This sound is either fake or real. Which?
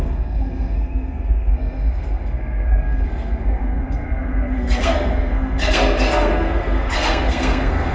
fake